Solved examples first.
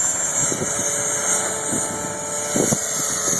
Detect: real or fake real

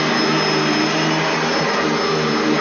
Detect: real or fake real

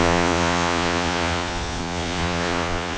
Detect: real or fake fake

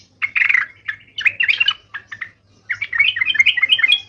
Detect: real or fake real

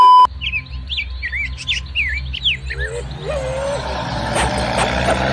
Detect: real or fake real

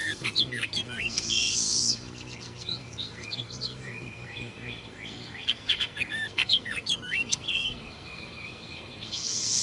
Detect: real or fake fake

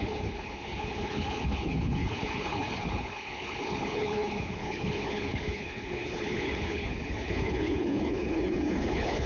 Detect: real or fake fake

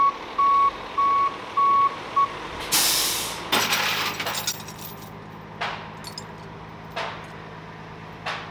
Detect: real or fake real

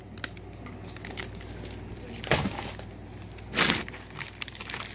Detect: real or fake real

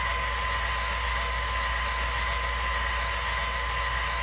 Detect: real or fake real